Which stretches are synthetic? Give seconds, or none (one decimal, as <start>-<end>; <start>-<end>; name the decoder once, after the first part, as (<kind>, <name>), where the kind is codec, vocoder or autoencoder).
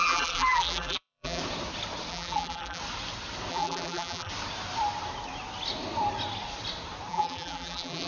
0.0-1.4 (vocoder, BigVGAN v2); 2.1-2.8; 3.5-4.3; 7.1-8.1